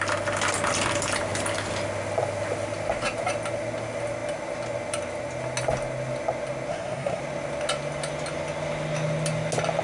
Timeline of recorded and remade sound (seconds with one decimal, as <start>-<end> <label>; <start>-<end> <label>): 0.0-6.7 recorded; 6.7-7.2 remade; 7.2-9.8 recorded